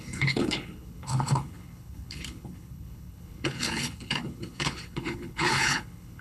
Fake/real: fake